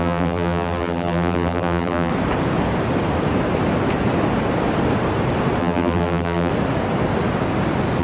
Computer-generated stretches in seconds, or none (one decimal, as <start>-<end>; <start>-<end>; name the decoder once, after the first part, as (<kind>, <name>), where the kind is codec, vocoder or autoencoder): 0.0-2.1 (vocoder, BigVGAN v2); 5.6-6.5